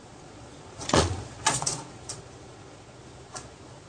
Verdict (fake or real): fake